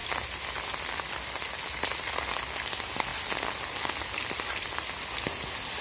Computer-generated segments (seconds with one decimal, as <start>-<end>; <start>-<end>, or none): none